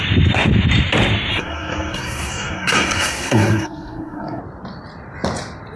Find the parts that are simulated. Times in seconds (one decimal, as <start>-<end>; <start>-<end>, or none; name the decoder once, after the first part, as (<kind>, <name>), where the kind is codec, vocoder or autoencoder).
1.3-4.4 (codec, SNAC)